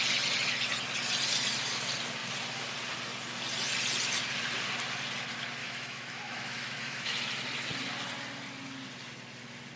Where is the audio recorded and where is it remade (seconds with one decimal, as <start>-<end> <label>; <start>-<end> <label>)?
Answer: 0.0-5.6 recorded; 5.6-7.3 remade; 7.3-9.8 recorded